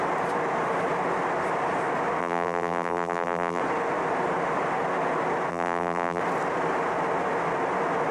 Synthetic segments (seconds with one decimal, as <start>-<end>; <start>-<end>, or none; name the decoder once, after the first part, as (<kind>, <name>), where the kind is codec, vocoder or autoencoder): 2.2-3.6 (vocoder, BigVGAN v2); 5.5-6.2